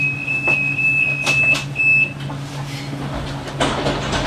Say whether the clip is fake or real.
real